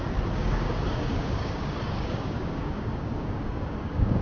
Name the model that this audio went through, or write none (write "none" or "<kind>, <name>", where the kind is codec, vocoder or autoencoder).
codec, DAC